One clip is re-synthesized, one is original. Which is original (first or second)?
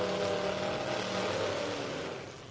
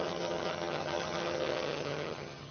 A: first